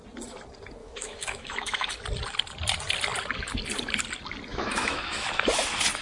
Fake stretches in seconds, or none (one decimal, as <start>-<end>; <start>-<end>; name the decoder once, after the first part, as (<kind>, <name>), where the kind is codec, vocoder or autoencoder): 0.8-1.9 (autoencoder, DAC-VAE); 4.5-5.3